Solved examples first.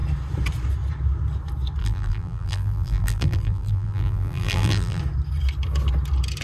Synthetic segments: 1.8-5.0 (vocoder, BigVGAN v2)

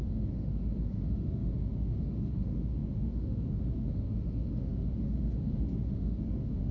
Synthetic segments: 0.0-6.7 (autoencoder, DAC-VAE)